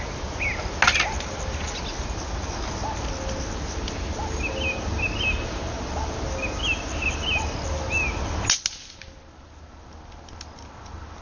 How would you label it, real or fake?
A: real